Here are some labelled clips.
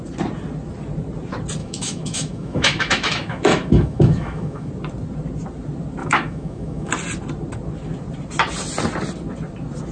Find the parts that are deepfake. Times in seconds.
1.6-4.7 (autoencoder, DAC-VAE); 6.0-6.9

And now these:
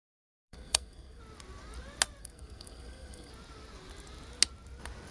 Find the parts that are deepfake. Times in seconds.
0.4-1.2 (codec, SNAC); 2.2-3.3

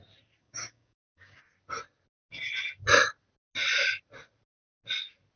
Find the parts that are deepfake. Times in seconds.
0.4-1.4 (codec, DAC)

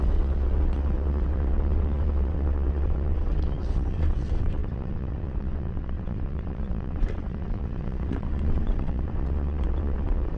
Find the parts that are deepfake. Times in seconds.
0.0-10.4 (vocoder, WaveNeXt)

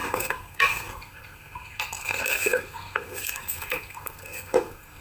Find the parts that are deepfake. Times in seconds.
0.0-5.0 (codec, SNAC)